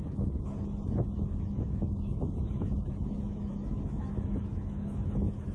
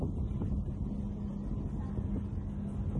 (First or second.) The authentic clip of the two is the second